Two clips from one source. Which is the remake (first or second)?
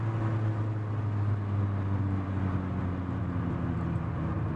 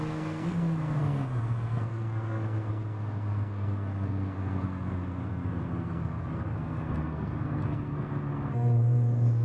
second